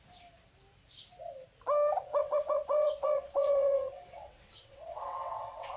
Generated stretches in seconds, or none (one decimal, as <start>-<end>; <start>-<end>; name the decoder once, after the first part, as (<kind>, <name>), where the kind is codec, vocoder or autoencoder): 2.2-5.8 (vocoder, WaveNeXt)